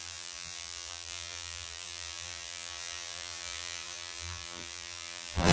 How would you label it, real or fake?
fake